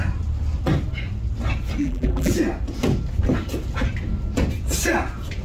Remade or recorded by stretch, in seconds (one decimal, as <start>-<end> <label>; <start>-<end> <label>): 0.0-1.8 recorded; 1.8-2.3 remade; 2.3-5.4 recorded